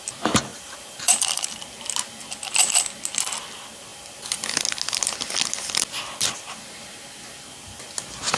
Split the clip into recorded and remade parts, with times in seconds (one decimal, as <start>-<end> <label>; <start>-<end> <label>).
0.0-0.5 recorded; 0.5-1.6 remade; 1.6-8.4 recorded